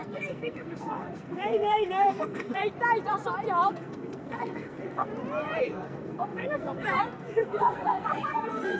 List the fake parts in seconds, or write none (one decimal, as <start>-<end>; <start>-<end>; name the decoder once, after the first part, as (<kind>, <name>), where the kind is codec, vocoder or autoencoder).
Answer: 0.0-2.6 (codec, SNAC); 3.7-5.1; 5.6-8.8

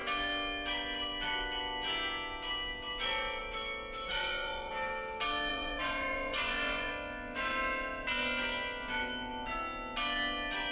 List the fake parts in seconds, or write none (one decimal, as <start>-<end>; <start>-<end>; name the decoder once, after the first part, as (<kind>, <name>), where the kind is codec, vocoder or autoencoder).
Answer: 4.1-4.7 (vocoder, Vocos); 5.5-6.9

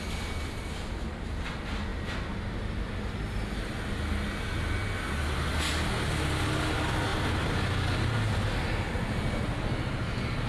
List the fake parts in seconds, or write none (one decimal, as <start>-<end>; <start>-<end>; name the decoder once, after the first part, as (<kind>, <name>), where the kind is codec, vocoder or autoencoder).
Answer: none